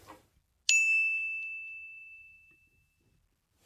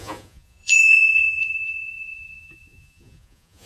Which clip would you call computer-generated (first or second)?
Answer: second